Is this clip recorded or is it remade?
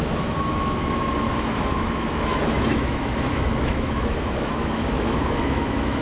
remade